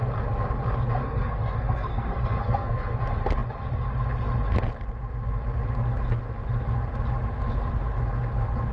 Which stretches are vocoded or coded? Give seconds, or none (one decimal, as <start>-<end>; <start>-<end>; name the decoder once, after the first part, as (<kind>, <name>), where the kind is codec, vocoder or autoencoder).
1.0-3.0 (codec, SNAC)